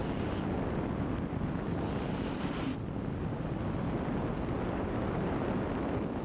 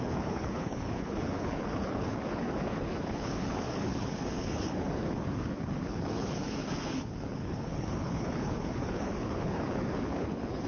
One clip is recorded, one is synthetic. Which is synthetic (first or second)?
second